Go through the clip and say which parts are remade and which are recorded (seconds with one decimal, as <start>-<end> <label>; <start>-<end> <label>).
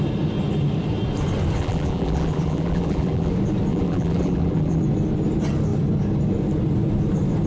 0.0-1.6 recorded; 1.6-3.3 remade; 3.3-3.7 recorded; 3.7-4.8 remade; 4.8-7.5 recorded